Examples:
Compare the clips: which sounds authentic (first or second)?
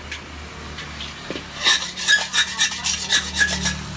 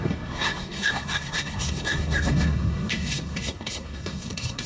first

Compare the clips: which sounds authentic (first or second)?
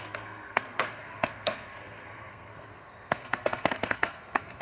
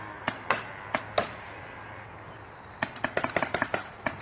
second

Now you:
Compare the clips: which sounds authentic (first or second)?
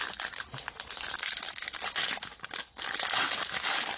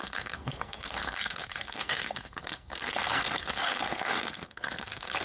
first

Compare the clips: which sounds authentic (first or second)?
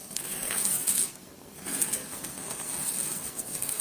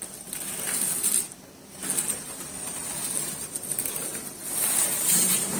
second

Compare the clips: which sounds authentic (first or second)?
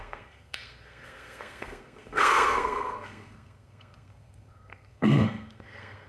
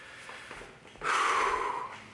second